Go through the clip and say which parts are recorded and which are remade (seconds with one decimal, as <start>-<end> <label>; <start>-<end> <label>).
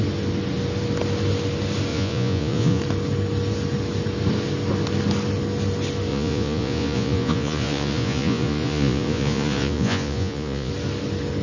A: 0.0-1.9 recorded; 1.9-2.8 remade; 2.8-6.1 recorded; 6.1-10.7 remade; 10.7-11.4 recorded